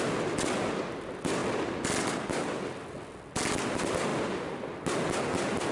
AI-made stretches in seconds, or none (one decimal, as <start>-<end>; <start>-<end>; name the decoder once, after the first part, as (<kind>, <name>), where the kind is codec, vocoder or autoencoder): none